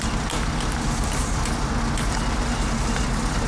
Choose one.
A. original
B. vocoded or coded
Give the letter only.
A